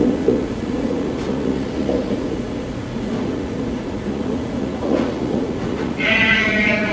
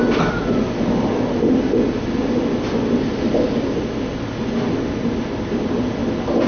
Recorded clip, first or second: second